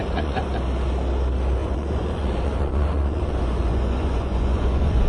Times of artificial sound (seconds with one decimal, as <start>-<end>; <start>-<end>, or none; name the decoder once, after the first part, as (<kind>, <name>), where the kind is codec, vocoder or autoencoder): 0.0-0.5 (vocoder, Vocos); 1.6-5.1